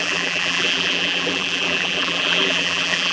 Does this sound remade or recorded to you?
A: remade